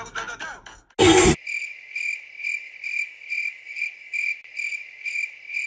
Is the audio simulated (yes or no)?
no